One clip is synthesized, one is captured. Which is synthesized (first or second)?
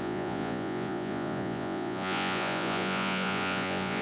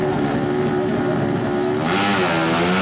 first